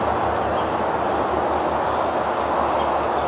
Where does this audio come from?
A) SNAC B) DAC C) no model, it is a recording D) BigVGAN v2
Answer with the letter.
C